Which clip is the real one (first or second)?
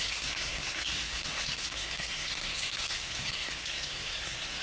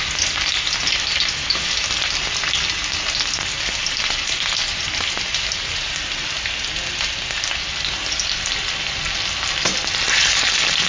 second